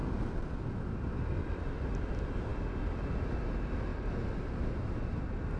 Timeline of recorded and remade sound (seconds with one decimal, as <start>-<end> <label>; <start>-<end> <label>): 0.0-5.6 recorded